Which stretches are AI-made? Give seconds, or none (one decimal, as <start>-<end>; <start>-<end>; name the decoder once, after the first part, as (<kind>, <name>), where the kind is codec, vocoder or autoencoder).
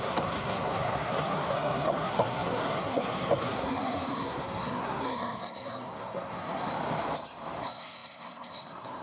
0.0-6.7 (codec, SNAC); 7.6-9.0